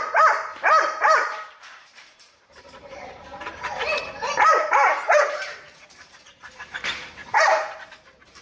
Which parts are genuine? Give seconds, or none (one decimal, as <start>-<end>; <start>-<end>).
none